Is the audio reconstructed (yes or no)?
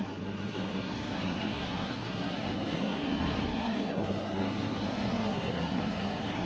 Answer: yes